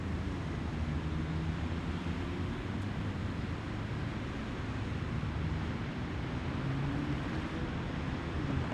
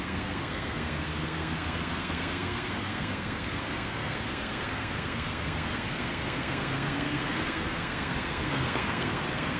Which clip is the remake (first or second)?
second